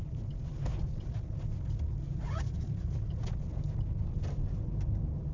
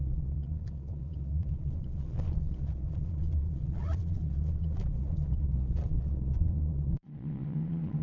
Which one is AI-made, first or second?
second